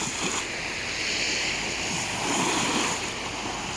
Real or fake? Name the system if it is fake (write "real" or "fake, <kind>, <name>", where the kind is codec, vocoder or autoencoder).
real